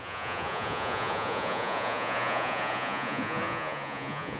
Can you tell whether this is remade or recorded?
remade